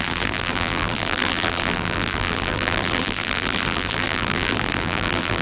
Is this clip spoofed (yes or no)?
yes